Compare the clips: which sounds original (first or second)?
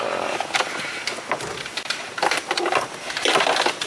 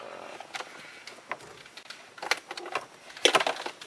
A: second